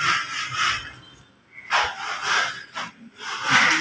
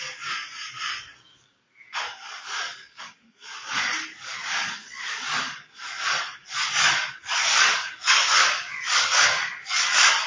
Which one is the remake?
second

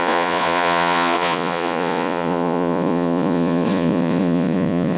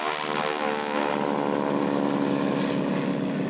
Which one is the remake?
first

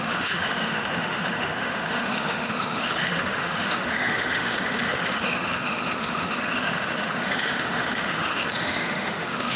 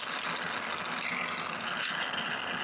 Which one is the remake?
first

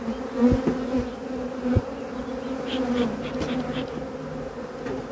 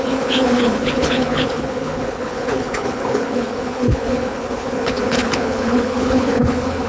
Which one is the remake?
second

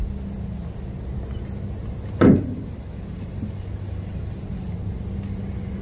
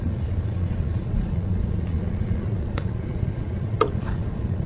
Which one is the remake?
second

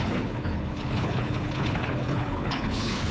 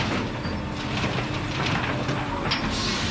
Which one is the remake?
first